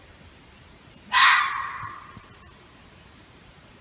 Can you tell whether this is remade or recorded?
remade